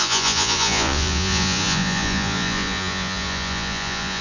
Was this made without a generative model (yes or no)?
no